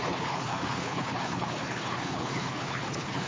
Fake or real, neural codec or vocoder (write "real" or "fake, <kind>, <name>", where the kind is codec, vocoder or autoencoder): fake, codec, HILCodec